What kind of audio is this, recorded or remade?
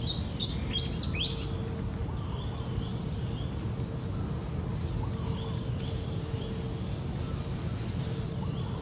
recorded